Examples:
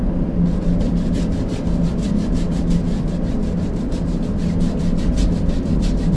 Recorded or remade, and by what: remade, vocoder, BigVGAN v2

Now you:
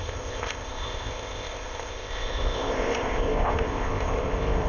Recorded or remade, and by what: remade, codec, ZipCodec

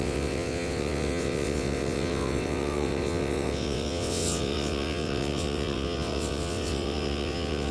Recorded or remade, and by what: remade, vocoder, WaveNeXt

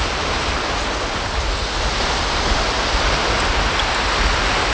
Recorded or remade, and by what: recorded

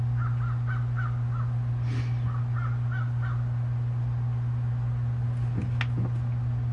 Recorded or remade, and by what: recorded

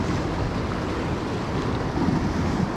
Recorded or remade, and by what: recorded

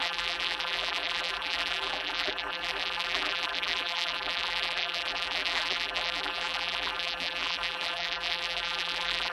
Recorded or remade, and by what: remade, vocoder, BigVGAN v2